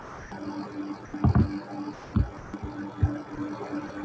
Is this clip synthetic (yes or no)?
no